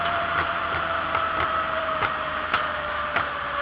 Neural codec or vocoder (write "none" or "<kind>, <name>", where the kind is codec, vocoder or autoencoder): vocoder, BigVGAN v2